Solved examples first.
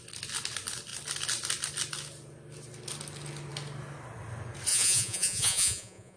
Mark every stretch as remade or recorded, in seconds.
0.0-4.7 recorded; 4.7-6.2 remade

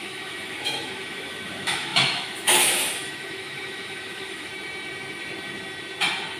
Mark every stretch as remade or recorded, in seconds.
0.0-4.5 remade; 4.5-6.4 recorded

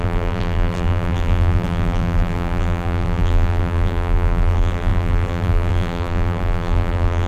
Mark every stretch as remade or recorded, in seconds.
0.0-7.3 remade